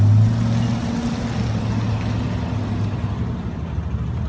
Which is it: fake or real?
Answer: real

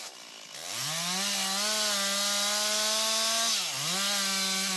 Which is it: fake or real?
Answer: real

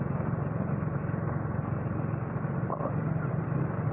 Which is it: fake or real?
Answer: real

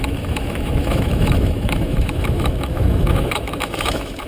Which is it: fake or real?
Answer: fake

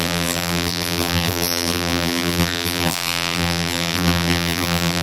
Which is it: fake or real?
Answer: fake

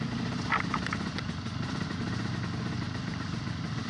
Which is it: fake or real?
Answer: real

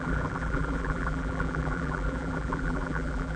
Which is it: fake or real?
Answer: fake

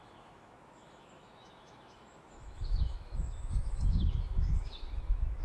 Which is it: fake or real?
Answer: fake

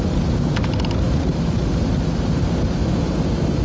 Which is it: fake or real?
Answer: real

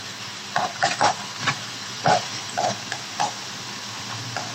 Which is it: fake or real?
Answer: real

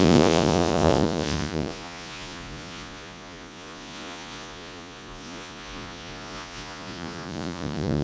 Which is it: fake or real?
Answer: fake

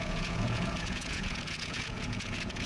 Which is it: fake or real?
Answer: fake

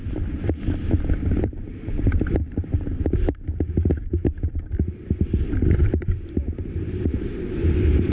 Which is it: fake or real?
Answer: fake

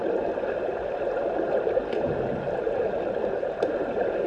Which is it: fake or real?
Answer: real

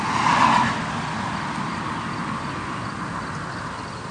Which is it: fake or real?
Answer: real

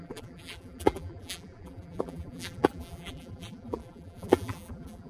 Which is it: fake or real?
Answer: fake